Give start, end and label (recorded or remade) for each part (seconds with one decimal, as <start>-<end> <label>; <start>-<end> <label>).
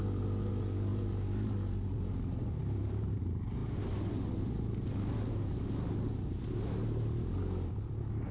0.0-8.3 recorded